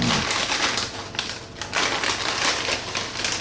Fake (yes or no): no